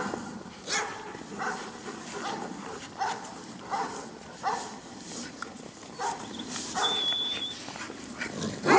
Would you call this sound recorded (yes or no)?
yes